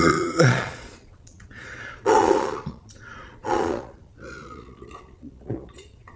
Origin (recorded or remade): remade